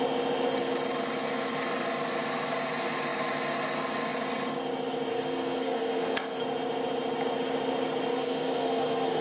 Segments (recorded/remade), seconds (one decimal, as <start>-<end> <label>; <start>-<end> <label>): 0.0-5.1 recorded; 5.1-6.4 remade; 6.4-8.1 recorded; 8.1-9.2 remade